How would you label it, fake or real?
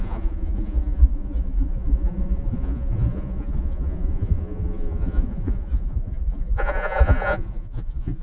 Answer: fake